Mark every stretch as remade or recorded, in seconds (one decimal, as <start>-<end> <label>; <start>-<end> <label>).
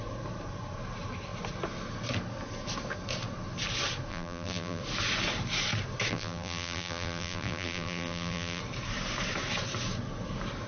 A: 0.0-4.1 recorded; 4.1-4.8 remade; 4.8-6.1 recorded; 6.1-8.6 remade; 8.6-10.7 recorded